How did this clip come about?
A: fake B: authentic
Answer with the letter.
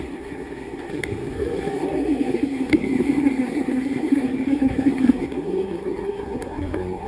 A